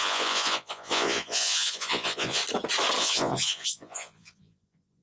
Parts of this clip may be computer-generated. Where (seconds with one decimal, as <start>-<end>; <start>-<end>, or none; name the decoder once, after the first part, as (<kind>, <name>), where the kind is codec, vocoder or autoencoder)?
0.0-2.4 (vocoder, Vocos); 3.0-5.0